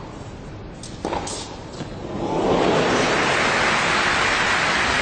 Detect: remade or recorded recorded